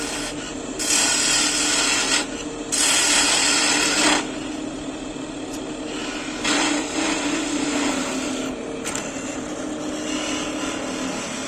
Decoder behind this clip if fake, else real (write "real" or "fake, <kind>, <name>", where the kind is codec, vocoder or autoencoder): real